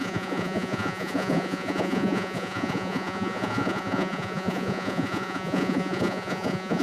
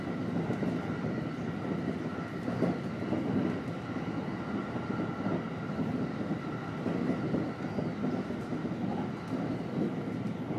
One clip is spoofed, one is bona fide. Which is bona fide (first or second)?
second